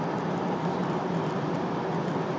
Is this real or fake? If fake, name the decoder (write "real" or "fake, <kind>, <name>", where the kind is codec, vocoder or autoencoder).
real